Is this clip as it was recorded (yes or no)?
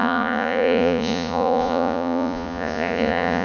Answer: no